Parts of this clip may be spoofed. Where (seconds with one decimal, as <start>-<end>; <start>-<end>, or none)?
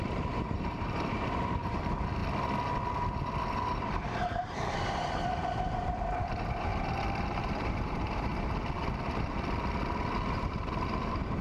0.0-2.2; 3.6-6.7; 7.4-8.3; 10.3-11.4